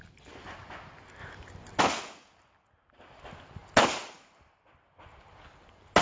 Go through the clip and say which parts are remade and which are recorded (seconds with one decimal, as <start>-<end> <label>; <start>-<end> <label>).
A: 0.0-6.0 recorded